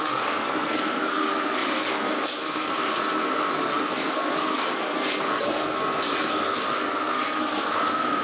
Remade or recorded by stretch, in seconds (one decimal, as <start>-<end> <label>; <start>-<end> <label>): 0.0-8.2 remade